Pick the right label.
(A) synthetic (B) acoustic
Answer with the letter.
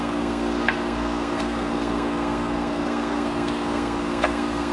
A